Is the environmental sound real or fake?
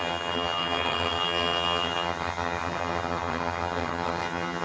fake